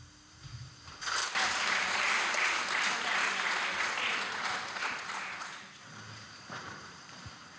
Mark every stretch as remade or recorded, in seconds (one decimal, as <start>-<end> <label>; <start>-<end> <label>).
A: 0.0-1.2 remade; 1.2-5.8 recorded; 5.8-7.6 remade